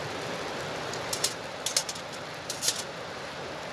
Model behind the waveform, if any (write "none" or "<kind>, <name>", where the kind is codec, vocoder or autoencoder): none